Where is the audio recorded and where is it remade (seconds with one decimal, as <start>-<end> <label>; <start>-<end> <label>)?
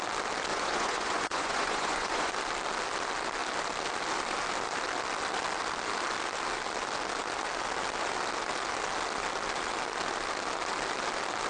0.0-0.5 recorded; 0.5-2.3 remade; 2.3-11.5 recorded